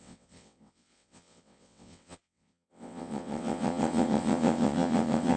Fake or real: fake